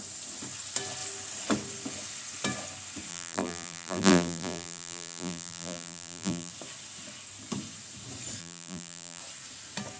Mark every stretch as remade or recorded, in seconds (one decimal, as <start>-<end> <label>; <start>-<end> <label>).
0.0-3.1 recorded; 3.1-6.5 remade; 6.5-8.4 recorded; 8.4-9.2 remade; 9.2-10.0 recorded